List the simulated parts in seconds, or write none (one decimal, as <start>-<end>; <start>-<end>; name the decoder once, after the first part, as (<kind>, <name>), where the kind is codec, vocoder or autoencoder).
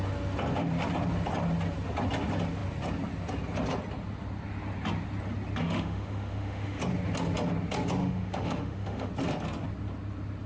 5.6-6.8 (autoencoder, DAC-VAE); 8.0-9.1